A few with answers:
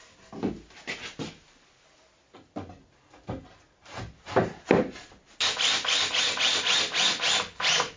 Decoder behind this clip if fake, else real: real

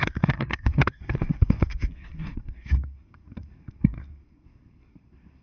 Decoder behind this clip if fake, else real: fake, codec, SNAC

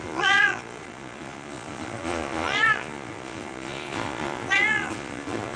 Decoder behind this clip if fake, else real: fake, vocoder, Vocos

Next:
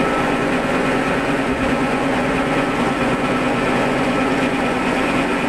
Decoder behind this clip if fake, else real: fake, vocoder, Vocos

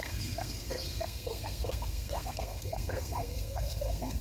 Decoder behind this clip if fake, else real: fake, codec, SNAC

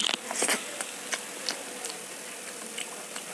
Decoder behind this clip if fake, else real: real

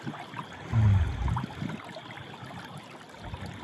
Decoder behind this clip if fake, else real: real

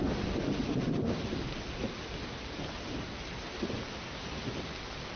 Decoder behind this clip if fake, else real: real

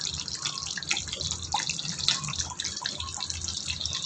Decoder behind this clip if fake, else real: real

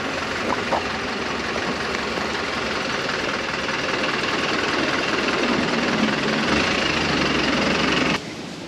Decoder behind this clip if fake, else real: fake, vocoder, BigVGAN v2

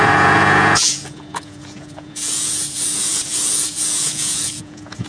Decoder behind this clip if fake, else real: fake, vocoder, Vocos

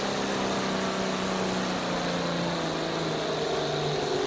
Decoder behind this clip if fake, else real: real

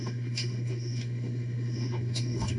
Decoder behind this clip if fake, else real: fake, autoencoder, DAC-VAE